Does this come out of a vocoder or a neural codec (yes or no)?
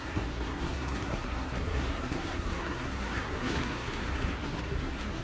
yes